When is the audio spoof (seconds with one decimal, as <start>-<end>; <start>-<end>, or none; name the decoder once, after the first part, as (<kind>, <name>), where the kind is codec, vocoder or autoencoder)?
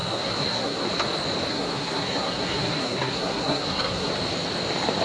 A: 0.0-0.9 (codec, SNAC); 1.5-4.1